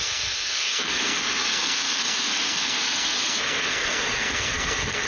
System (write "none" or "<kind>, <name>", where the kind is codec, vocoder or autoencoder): codec, SNAC